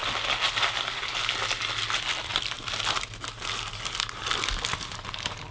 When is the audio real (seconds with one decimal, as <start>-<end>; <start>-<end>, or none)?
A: 0.0-5.5